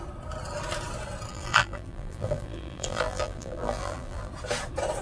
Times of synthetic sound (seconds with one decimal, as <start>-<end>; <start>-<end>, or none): 1.3-4.3